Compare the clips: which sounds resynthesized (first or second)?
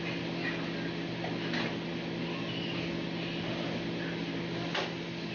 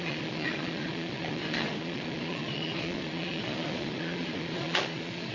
second